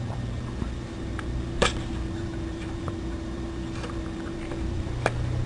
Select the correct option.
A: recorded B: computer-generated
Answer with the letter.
B